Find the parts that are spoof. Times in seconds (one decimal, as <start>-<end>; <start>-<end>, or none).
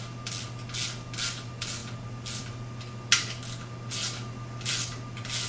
none